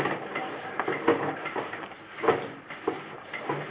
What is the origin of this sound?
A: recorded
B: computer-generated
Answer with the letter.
A